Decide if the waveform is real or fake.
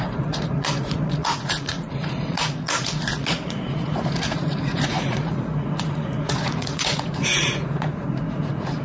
fake